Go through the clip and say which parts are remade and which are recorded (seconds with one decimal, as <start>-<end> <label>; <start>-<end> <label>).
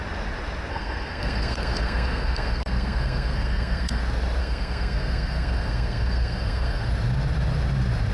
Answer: 0.0-0.7 recorded; 0.7-4.0 remade; 4.0-4.4 recorded; 4.4-6.9 remade; 6.9-8.1 recorded